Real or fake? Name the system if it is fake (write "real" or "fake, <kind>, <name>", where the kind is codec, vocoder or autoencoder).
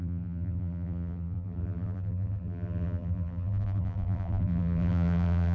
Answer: fake, vocoder, BigVGAN v2